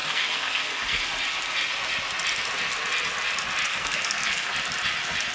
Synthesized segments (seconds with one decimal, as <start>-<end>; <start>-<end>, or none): 0.0-1.0; 3.7-4.5